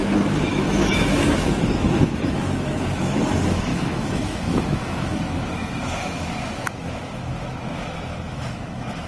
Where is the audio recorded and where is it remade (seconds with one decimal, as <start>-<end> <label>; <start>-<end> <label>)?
0.0-0.5 recorded; 0.5-9.1 remade